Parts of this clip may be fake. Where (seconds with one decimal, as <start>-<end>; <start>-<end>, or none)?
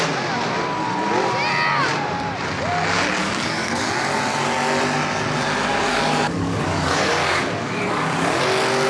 3.2-3.8; 5.7-8.4